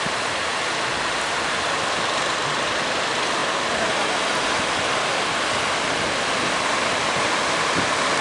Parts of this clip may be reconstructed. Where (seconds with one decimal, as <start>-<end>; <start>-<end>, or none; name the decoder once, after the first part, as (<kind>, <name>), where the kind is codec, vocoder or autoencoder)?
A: 0.0-0.5 (vocoder, BigVGAN v2); 1.3-3.4; 7.7-8.2